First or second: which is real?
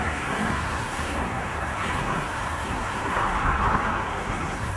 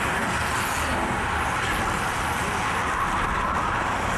second